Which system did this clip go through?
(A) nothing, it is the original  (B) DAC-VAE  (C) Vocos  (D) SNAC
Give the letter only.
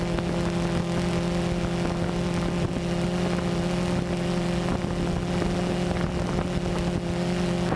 A